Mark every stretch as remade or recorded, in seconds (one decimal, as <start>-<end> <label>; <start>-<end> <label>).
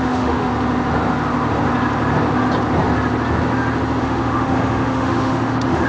0.0-0.5 remade; 0.5-4.0 recorded; 4.0-5.9 remade